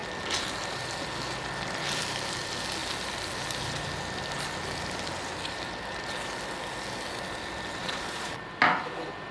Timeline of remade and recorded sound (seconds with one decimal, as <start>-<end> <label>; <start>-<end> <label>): 0.0-7.8 recorded; 7.8-8.4 remade; 8.4-9.3 recorded